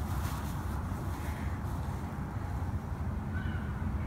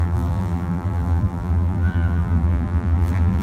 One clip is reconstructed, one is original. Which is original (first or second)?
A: first